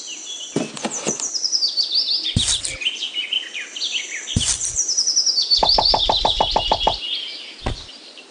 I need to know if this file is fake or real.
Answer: fake